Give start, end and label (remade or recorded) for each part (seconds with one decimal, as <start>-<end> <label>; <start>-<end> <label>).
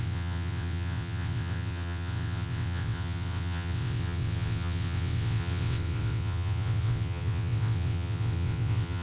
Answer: 0.0-9.0 remade